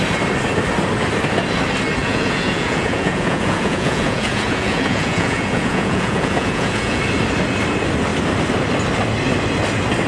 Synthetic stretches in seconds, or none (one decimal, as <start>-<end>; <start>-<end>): 2.0-7.0